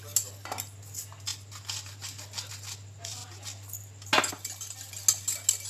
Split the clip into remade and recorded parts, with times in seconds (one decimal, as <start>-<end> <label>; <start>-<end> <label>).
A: 0.0-5.7 recorded